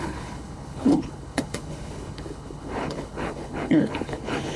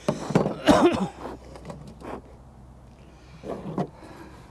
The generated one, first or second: first